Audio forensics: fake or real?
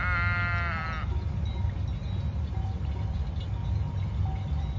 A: real